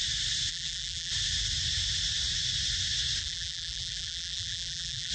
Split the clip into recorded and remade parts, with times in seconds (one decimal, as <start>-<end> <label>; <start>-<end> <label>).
0.0-0.5 recorded; 0.5-1.1 remade; 1.1-3.2 recorded; 3.2-5.1 remade